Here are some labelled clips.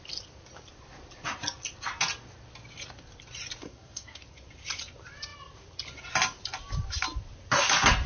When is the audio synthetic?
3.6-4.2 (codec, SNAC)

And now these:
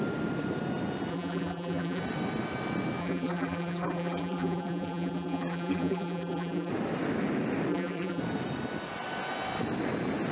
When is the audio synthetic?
1.1-2.0 (vocoder, BigVGAN v2); 3.0-6.7; 7.7-8.2

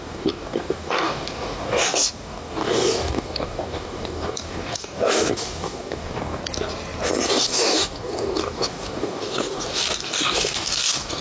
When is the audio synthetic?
0.0-6.4 (codec, DAC); 7.3-11.2

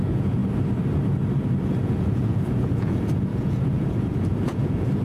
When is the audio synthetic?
0.0-0.4 (vocoder, Vocos); 1.8-5.0

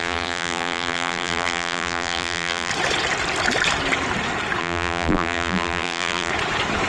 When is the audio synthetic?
0.0-2.7 (vocoder, BigVGAN v2); 4.6-6.3

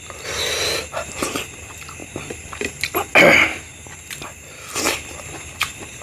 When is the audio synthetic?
none

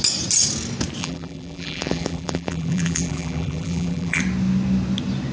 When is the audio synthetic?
1.0-4.2 (vocoder, BigVGAN v2)